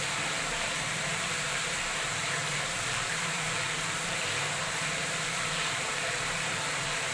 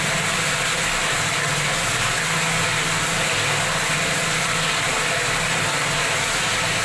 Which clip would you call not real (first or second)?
first